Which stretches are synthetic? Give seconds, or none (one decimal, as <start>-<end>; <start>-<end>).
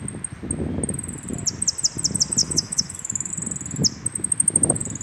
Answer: 2.4-3.3